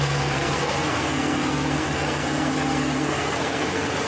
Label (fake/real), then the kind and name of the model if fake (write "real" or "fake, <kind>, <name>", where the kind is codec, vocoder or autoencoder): fake, codec, SNAC